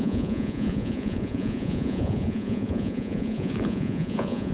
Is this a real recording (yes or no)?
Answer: no